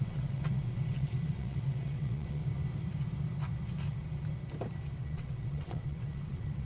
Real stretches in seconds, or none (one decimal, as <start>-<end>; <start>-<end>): 2.4-5.0